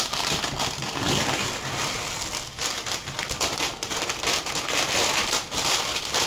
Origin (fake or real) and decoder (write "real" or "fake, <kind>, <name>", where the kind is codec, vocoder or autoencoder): real